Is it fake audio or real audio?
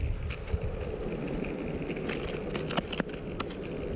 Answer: real